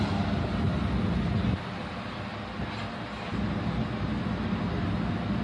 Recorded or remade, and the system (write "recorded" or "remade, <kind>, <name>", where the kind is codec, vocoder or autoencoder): recorded